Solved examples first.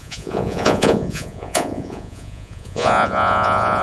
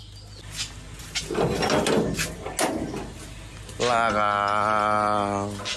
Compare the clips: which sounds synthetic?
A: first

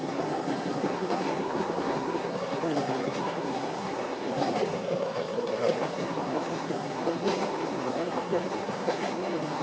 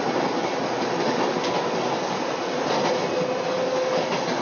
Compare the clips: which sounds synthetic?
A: first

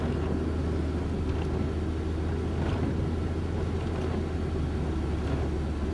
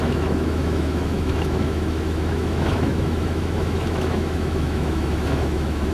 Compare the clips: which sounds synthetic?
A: second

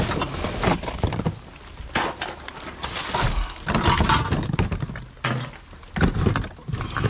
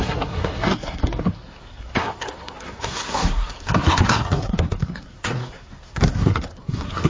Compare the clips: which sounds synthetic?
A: second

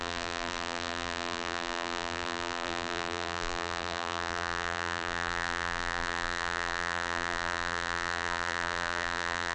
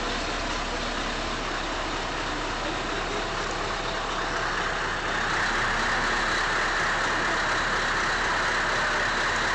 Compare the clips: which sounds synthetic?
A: first